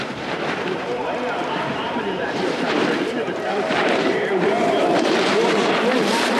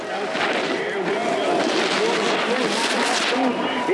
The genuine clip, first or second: second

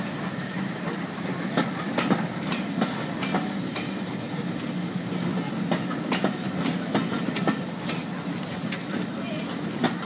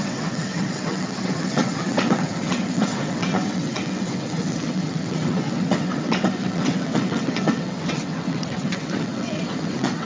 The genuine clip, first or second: first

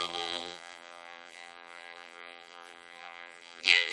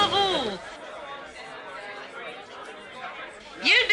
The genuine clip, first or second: second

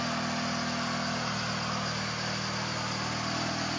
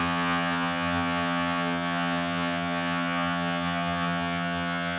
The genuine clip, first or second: first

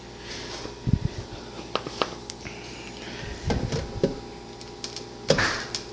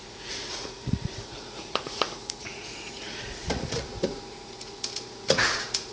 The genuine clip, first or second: first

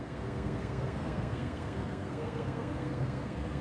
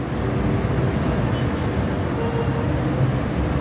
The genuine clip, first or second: second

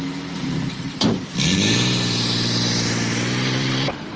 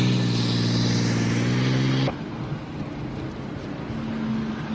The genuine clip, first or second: second